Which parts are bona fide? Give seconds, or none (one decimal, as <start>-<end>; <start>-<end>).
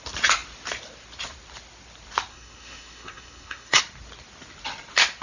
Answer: 0.0-2.3; 3.8-5.2